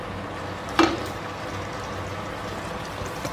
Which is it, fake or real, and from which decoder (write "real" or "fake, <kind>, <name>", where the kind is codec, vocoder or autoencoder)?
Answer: real